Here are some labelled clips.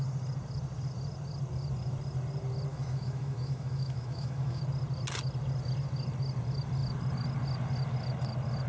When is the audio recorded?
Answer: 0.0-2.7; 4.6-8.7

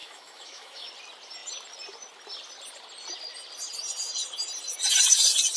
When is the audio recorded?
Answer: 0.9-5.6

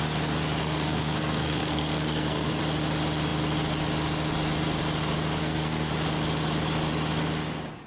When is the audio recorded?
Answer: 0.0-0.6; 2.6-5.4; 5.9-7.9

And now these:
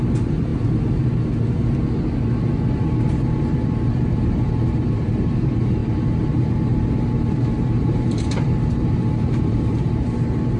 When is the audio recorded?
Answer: 0.5-2.7